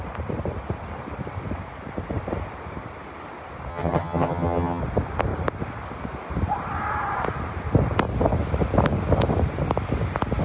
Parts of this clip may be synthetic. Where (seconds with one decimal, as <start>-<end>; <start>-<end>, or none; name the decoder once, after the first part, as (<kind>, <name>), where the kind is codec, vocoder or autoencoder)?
3.7-4.8 (vocoder, HiFi-GAN)